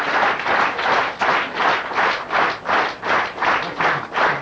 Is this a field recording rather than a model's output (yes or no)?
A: yes